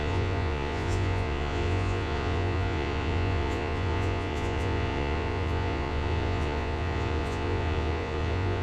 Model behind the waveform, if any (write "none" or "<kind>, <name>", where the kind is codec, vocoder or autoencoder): vocoder, Vocos